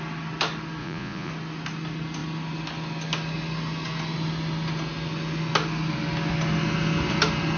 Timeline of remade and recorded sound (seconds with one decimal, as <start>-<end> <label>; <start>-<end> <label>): 0.0-0.8 recorded; 0.8-1.3 remade; 1.3-7.6 recorded